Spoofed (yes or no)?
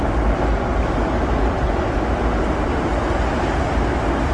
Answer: no